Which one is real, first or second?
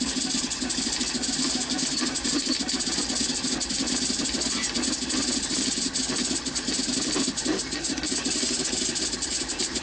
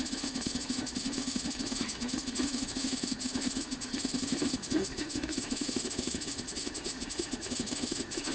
first